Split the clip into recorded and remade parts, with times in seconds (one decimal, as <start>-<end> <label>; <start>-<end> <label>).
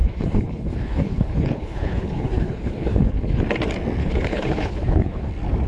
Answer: 0.0-3.4 remade; 3.4-4.0 recorded; 4.0-5.3 remade; 5.3-5.7 recorded